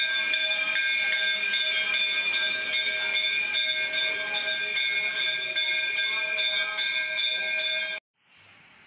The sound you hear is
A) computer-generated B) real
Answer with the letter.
B